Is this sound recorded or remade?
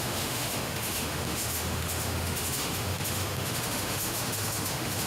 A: remade